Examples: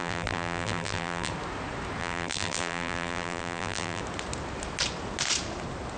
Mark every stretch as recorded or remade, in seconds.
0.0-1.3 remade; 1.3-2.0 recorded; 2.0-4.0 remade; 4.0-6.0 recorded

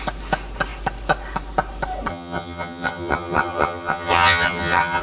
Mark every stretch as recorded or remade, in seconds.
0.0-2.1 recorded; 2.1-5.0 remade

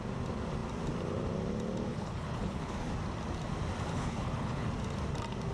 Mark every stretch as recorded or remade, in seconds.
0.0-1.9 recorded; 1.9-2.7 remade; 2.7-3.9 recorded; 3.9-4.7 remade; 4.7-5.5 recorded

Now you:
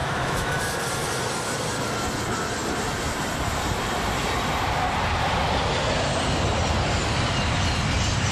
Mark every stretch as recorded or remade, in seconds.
0.0-0.6 remade; 0.6-8.3 recorded

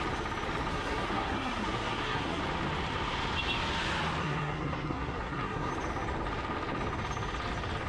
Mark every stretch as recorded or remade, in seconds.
0.0-0.7 recorded; 0.7-2.4 remade; 2.4-4.2 recorded; 4.2-5.7 remade; 5.7-7.9 recorded